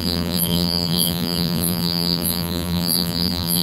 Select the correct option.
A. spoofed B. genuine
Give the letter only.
A